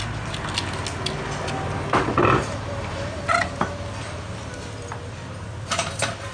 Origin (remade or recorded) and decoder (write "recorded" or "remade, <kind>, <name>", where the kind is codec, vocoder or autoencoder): recorded